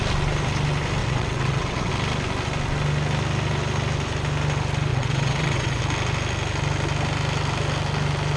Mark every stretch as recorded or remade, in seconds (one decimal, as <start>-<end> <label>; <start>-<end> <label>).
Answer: 0.0-1.0 recorded; 1.0-1.9 remade; 1.9-4.9 recorded; 4.9-5.8 remade; 5.8-8.4 recorded